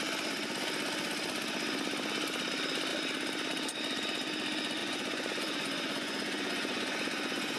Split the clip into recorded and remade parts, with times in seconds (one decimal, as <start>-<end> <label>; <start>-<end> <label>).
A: 0.0-4.8 recorded; 4.8-7.6 remade

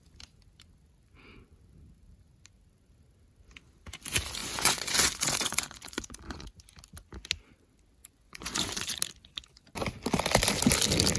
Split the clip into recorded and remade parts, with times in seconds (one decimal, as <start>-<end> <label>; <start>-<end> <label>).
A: 0.0-4.4 recorded; 4.4-6.6 remade; 6.6-8.0 recorded; 8.0-9.0 remade; 9.0-11.2 recorded

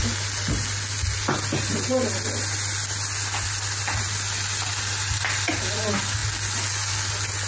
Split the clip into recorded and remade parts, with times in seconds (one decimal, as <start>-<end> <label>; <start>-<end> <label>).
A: 0.0-7.5 recorded

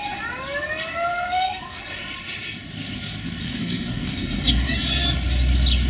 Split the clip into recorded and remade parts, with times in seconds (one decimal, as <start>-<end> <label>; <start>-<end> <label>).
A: 0.0-1.1 recorded; 1.1-1.8 remade; 1.8-3.4 recorded; 3.4-4.5 remade; 4.5-5.9 recorded

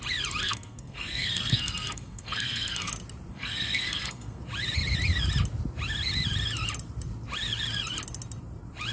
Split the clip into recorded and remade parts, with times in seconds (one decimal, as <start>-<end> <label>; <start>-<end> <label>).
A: 0.0-0.4 recorded; 0.4-2.9 remade; 2.9-3.3 recorded; 3.3-4.4 remade; 4.4-8.9 recorded

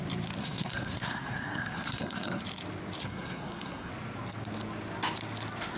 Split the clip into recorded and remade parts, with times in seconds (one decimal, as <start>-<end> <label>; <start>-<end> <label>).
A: 0.0-0.4 recorded; 0.4-2.4 remade; 2.4-3.0 recorded; 3.0-3.9 remade; 3.9-5.8 recorded

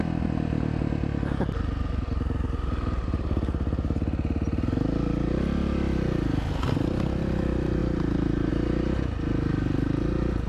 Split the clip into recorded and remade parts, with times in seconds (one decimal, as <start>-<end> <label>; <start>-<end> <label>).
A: 0.0-7.8 recorded; 7.8-8.5 remade; 8.5-10.5 recorded

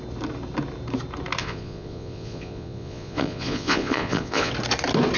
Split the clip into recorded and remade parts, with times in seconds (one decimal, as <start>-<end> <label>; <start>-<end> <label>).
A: 0.0-1.4 recorded; 1.4-4.5 remade; 4.5-5.2 recorded